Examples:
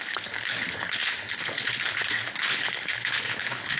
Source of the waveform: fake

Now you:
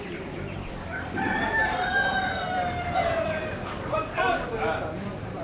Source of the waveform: fake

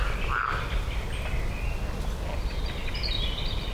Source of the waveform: real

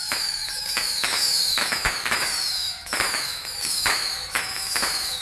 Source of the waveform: fake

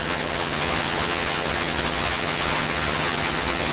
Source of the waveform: fake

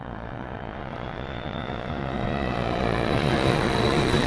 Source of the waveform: fake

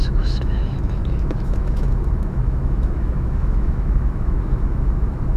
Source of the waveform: fake